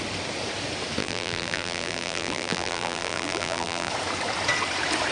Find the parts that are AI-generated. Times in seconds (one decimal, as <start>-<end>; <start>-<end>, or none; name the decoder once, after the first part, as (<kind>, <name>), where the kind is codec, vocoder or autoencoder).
1.0-3.9 (vocoder, BigVGAN v2)